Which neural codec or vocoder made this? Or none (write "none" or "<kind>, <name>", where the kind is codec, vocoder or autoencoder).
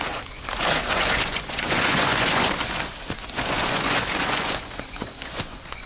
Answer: vocoder, Vocos